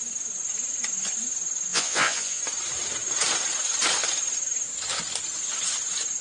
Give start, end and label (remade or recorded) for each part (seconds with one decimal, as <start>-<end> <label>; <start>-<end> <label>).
0.0-1.7 recorded; 1.7-2.4 remade; 2.4-6.2 recorded